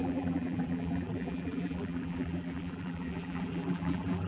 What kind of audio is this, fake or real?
fake